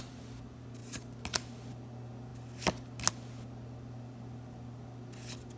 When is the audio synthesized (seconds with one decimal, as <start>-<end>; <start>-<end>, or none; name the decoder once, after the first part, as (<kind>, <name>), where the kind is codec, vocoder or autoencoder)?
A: none